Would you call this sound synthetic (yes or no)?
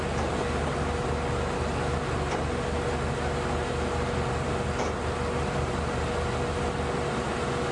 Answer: no